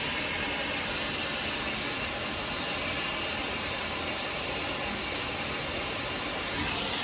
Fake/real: real